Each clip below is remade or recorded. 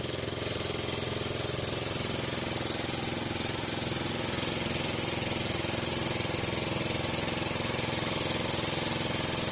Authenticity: recorded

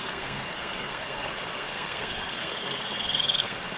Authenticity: remade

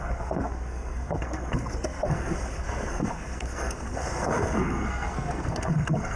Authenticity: remade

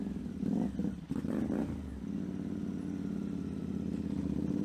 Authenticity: recorded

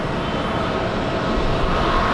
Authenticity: recorded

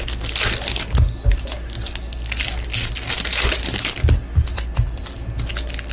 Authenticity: recorded